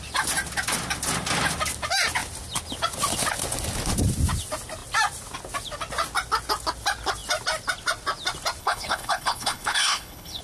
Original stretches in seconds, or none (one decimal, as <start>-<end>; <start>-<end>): 0.0-8.6